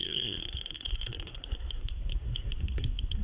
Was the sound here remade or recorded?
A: remade